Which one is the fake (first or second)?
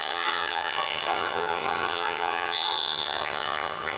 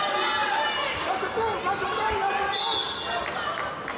first